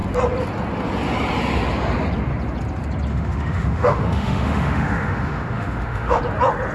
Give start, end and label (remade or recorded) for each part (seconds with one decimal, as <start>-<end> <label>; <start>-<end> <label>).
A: 0.0-3.1 recorded; 3.1-6.2 remade; 6.2-6.7 recorded